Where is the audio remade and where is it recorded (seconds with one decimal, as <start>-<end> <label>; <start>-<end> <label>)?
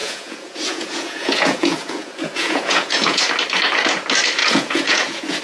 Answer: 0.0-3.2 remade; 3.2-4.4 recorded; 4.4-5.4 remade